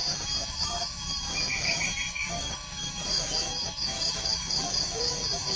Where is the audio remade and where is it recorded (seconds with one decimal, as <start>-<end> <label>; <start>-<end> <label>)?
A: 0.0-5.6 remade